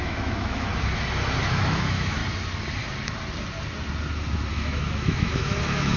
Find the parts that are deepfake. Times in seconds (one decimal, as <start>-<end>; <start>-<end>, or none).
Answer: 0.0-0.7; 1.4-2.2; 4.5-6.0